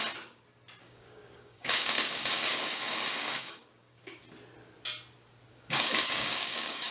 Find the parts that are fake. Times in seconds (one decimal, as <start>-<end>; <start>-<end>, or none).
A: 0.8-4.2; 5.5-6.9